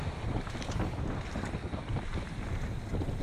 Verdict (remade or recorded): recorded